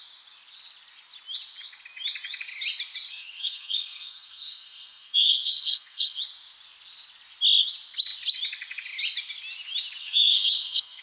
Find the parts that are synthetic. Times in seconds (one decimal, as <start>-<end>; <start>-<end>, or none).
3.1-6.2; 10.0-11.0